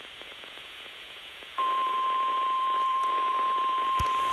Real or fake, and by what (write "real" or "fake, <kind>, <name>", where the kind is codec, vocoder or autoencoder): fake, vocoder, Vocos